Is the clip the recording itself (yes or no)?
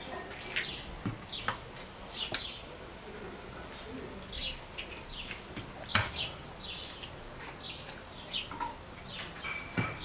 yes